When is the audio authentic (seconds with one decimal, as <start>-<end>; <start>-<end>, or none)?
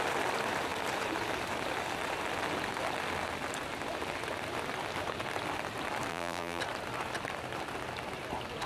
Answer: 0.0-6.1; 6.6-8.7